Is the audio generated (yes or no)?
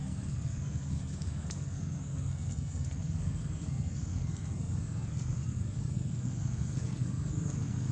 yes